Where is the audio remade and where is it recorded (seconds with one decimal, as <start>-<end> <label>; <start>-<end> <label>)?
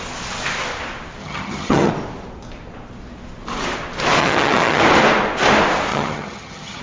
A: 0.0-1.2 recorded; 1.2-1.9 remade; 1.9-4.2 recorded; 4.2-4.8 remade; 4.8-5.9 recorded; 5.9-6.8 remade